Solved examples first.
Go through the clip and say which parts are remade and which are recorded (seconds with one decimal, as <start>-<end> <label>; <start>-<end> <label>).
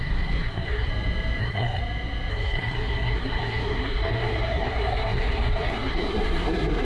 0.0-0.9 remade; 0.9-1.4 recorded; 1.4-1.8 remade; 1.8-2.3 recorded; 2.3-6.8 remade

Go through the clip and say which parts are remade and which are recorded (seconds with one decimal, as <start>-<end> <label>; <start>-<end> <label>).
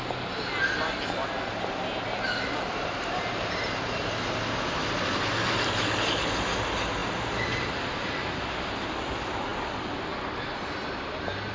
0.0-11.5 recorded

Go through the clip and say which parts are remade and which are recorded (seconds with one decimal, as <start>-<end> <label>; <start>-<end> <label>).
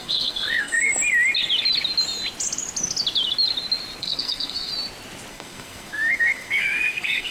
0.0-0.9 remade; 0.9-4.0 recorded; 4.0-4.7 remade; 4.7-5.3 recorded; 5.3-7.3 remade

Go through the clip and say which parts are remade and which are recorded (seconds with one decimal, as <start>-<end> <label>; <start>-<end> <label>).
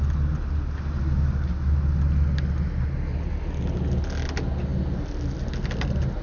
0.0-6.2 recorded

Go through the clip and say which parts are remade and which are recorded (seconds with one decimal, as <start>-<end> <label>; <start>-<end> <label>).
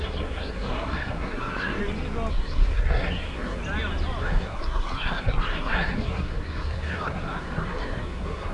0.0-1.8 remade; 1.8-2.3 recorded; 2.3-3.6 remade; 3.6-4.2 recorded; 4.2-8.5 remade